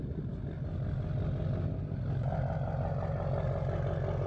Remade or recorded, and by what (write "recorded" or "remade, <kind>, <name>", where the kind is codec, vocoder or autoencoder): recorded